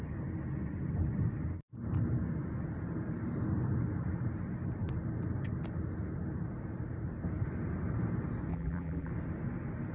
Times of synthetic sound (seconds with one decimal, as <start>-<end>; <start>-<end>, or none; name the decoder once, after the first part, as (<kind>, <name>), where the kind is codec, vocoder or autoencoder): 8.5-9.1 (vocoder, BigVGAN v2)